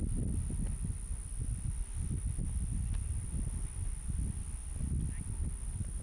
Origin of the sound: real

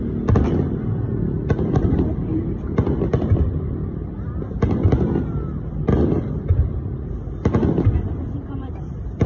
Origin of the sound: real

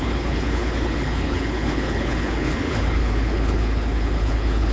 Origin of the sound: fake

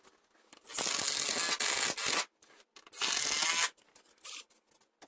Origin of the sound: real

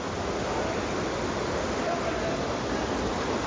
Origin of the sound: real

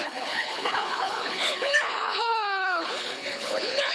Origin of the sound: fake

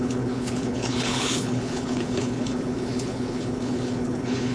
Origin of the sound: fake